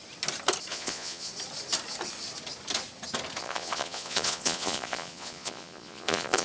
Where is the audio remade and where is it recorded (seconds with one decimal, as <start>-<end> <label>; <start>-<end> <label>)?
0.0-0.7 recorded; 0.7-1.3 remade; 1.3-3.4 recorded; 3.4-6.4 remade

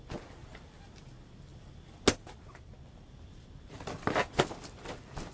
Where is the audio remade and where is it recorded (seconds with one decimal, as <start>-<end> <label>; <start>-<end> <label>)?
0.0-5.3 recorded

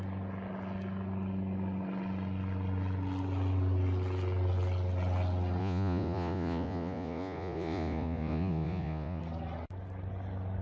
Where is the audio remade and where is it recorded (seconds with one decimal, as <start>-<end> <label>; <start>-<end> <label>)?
0.0-5.6 recorded; 5.6-9.2 remade; 9.2-10.6 recorded

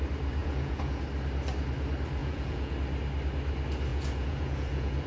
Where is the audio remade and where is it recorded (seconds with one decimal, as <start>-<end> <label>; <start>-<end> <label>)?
0.0-0.4 recorded; 0.4-1.0 remade; 1.0-2.2 recorded; 2.2-2.7 remade; 2.7-3.9 recorded; 3.9-5.1 remade

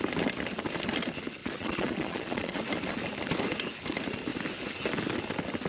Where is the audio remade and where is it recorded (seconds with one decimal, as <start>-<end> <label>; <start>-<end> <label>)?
0.0-1.4 recorded; 1.4-2.6 remade; 2.6-5.7 recorded

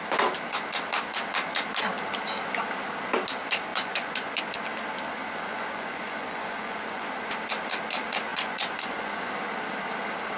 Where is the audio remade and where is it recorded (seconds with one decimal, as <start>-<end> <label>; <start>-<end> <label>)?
0.0-3.7 recorded; 3.7-4.4 remade; 4.4-5.2 recorded; 5.2-7.1 remade; 7.1-8.3 recorded; 8.3-9.3 remade; 9.3-10.4 recorded

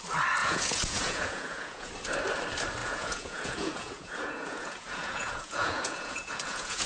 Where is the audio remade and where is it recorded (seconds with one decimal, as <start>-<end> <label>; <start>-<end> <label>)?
0.0-0.4 recorded; 0.4-1.9 remade; 1.9-2.8 recorded; 2.8-6.9 remade

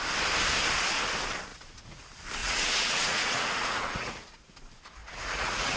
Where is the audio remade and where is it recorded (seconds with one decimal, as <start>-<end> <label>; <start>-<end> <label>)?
0.0-1.5 recorded; 1.5-2.0 remade; 2.0-2.4 recorded; 2.4-4.5 remade; 4.5-5.0 recorded; 5.0-5.8 remade